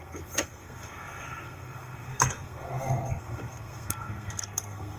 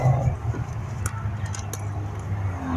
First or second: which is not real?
first